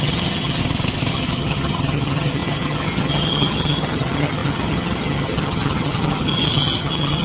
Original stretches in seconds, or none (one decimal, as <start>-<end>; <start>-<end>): 0.6-1.1